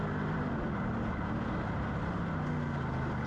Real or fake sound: real